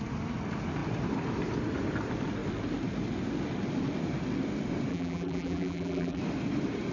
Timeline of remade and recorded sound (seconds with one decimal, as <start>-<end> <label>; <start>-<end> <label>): 0.0-4.9 recorded; 4.9-6.2 remade; 6.2-6.9 recorded